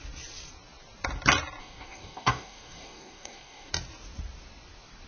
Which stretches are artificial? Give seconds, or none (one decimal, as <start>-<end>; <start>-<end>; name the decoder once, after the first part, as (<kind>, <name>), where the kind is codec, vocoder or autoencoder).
1.6-3.7 (codec, DAC)